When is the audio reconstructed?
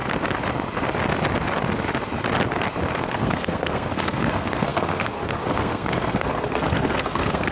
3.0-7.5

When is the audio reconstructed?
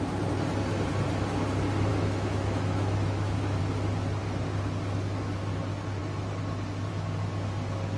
1.9-3.6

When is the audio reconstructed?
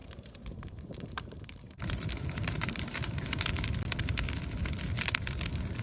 0.0-3.5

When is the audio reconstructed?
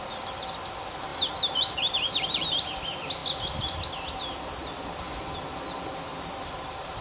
1.1-2.7; 6.1-7.0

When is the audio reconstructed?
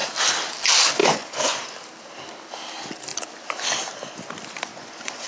1.0-1.6; 4.7-5.3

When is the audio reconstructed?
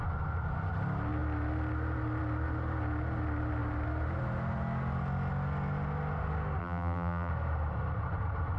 6.6-7.3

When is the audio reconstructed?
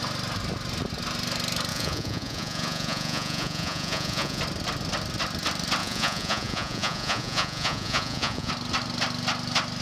1.7-4.4; 5.8-8.5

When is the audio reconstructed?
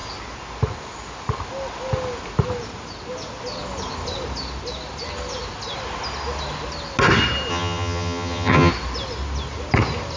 7.5-8.7